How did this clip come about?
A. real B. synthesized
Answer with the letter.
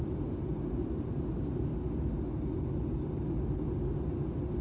A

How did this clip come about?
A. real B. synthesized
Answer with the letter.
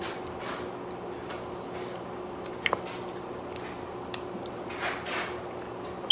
A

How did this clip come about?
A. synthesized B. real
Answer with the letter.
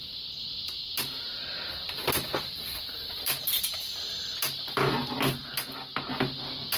B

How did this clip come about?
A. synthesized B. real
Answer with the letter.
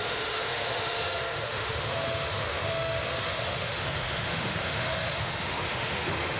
A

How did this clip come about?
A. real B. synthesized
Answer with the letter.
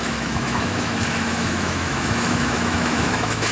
B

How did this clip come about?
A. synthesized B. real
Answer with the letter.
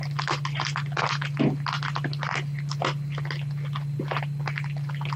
B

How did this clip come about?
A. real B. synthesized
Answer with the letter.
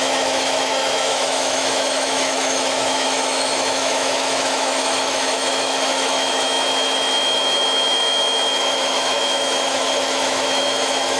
B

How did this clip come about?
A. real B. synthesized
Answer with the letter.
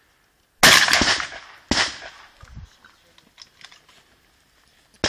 A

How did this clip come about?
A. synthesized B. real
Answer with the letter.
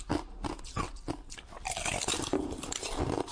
B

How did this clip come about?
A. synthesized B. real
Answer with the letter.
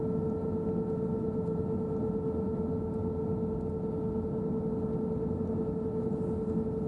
B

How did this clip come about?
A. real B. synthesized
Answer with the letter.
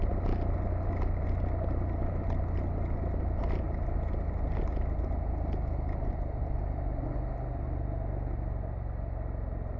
A